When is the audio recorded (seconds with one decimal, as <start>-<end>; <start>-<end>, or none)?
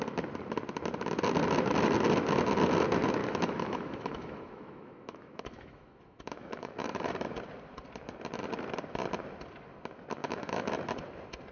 0.0-3.2; 7.1-10.2; 10.7-11.5